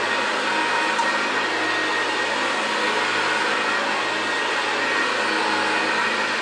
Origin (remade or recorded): recorded